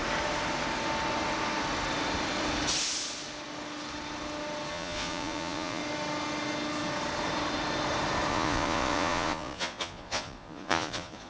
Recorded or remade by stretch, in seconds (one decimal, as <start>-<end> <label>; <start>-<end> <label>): 0.0-4.7 recorded; 4.7-5.8 remade; 5.8-8.3 recorded; 8.3-11.3 remade